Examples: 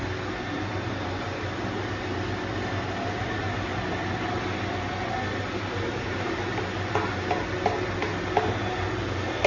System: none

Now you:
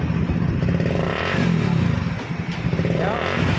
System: none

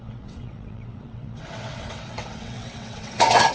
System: vocoder, WaveNeXt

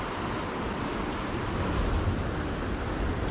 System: none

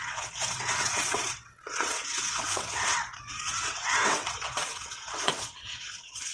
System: vocoder, WaveNeXt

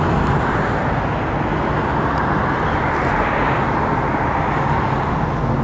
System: none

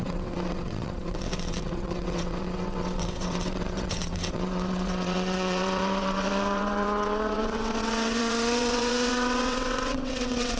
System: vocoder, WaveNeXt